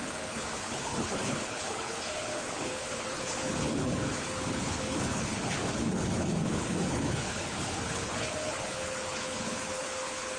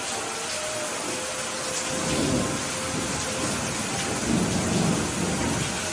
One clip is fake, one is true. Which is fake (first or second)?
first